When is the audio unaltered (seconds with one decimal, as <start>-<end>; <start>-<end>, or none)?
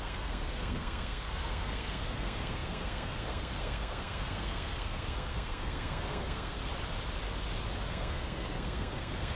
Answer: 6.7-7.9